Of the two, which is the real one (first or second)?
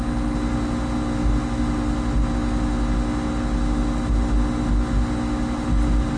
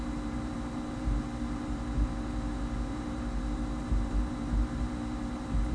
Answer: first